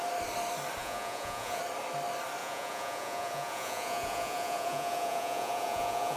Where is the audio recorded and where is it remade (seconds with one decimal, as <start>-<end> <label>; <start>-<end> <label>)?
0.0-0.8 recorded; 0.8-1.6 remade; 1.6-2.4 recorded; 2.4-6.2 remade